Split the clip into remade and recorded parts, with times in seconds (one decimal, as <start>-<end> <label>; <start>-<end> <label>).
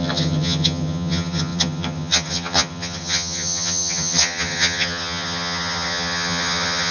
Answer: 0.0-6.9 remade